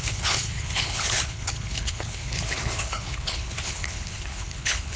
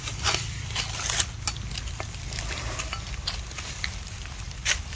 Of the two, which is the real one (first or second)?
second